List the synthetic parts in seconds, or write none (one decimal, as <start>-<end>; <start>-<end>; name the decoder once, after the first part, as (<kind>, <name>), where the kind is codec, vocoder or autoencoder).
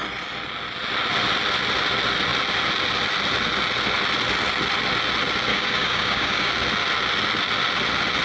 5.5-6.5 (codec, DAC)